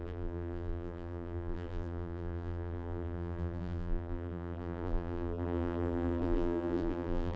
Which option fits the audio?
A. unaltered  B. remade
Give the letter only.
B